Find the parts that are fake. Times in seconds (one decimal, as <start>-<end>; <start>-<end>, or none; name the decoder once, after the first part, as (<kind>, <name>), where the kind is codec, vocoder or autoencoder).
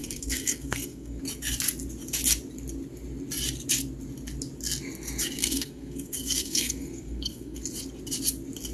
0.0-1.2 (codec, SNAC); 5.4-7.6